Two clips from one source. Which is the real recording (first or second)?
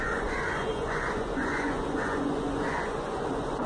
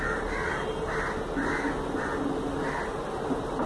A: second